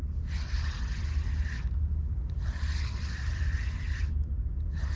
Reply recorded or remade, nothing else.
recorded